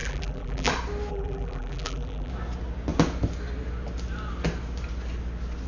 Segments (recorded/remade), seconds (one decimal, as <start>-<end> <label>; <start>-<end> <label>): 0.0-0.7 remade; 0.7-1.1 recorded; 1.1-2.3 remade; 2.3-5.7 recorded

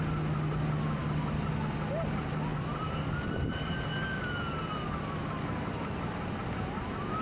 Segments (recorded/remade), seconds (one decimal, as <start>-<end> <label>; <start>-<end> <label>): 0.0-2.5 recorded; 2.5-4.7 remade; 4.7-7.2 recorded

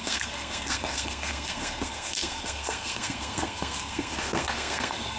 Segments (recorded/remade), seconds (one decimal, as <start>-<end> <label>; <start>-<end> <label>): 0.0-5.2 remade

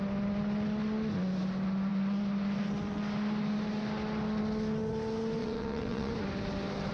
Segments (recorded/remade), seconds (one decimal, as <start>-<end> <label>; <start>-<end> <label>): 0.0-5.4 recorded; 5.4-6.1 remade; 6.1-6.9 recorded

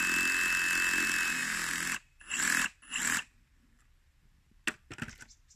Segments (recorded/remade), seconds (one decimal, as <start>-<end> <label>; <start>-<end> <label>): 0.0-5.6 recorded

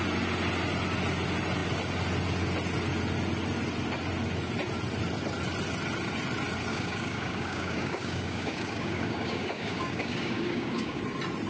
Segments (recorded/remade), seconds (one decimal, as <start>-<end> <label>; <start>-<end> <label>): 0.0-6.7 recorded; 6.7-11.0 remade; 11.0-11.5 recorded

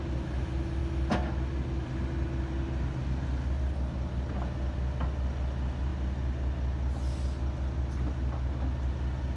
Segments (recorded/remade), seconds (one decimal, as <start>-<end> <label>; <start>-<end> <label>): 0.0-9.4 recorded